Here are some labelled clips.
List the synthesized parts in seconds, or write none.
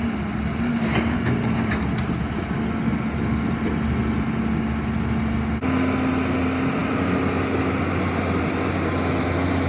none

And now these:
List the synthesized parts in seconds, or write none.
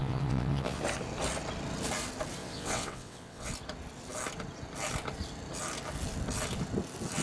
0.0-0.8 (vocoder, WaveNeXt); 2.4-3.5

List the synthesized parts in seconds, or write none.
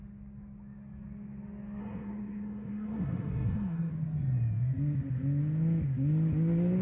1.8-3.9 (codec, SNAC)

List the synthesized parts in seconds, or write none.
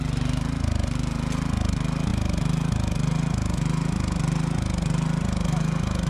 none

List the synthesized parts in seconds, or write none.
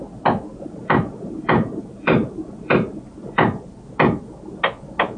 0.5-3.6 (vocoder, BigVGAN v2)